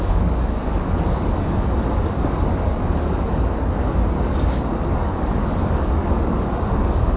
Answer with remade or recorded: remade